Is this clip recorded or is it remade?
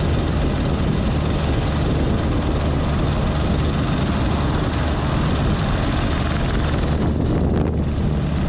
recorded